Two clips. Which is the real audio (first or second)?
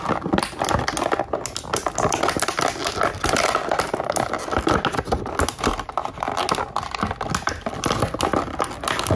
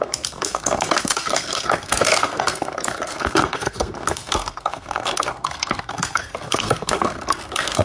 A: first